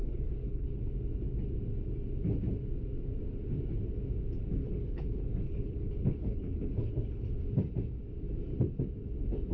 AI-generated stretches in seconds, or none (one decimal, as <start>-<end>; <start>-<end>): 0.0-0.8; 4.6-7.4